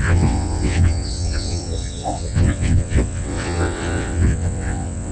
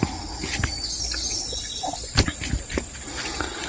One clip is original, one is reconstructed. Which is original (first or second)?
second